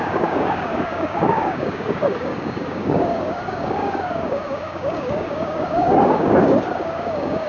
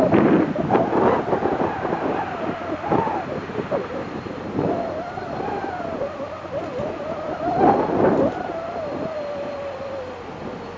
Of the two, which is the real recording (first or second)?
second